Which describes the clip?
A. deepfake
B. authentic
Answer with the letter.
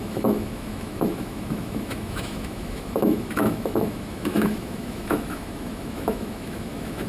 A